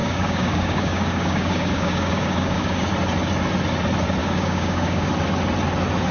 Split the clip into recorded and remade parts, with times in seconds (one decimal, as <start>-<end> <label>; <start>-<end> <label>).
0.0-2.9 remade; 2.9-4.2 recorded; 4.2-5.1 remade; 5.1-6.1 recorded